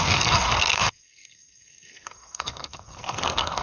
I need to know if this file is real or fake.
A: fake